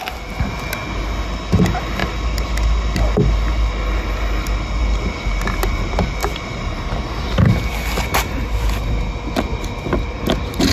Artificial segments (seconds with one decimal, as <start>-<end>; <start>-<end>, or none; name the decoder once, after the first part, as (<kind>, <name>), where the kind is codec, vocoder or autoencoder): none